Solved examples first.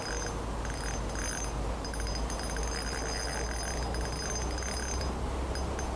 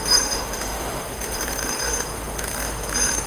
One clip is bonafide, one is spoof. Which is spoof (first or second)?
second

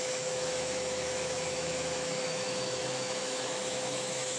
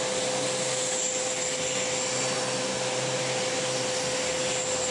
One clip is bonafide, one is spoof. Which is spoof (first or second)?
first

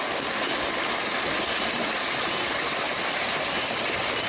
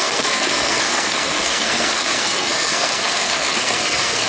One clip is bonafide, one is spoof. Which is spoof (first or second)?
second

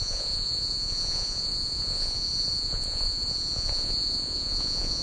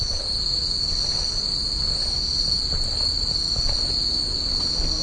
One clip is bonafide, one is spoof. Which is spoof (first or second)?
first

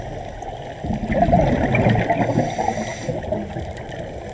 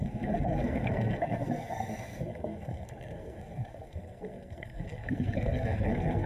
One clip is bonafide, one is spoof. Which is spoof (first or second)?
second